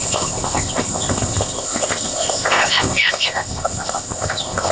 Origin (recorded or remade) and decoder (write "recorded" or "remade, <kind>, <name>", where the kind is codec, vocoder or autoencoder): remade, codec, ZipCodec